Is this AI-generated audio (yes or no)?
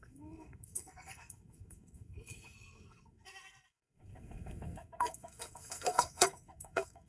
yes